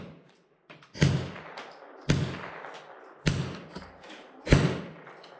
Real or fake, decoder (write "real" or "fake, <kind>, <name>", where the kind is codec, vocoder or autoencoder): real